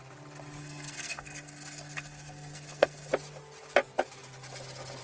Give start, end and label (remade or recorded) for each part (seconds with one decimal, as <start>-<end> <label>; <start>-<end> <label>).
0.0-0.6 recorded; 0.6-3.1 remade; 3.1-5.0 recorded